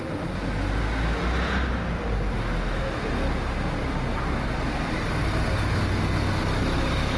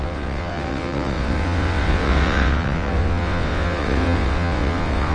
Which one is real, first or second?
first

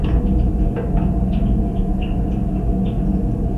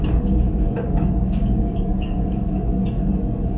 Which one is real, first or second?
first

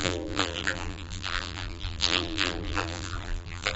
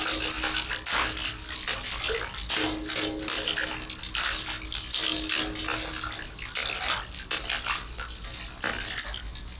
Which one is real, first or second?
second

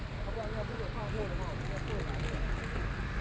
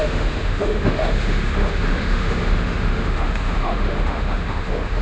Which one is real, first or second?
first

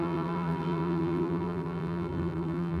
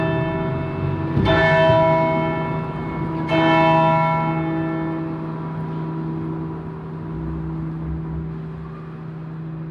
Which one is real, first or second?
second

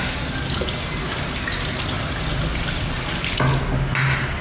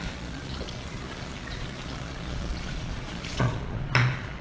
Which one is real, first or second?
first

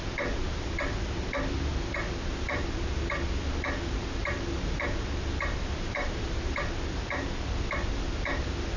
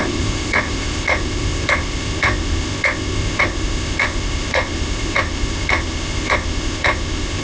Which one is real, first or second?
first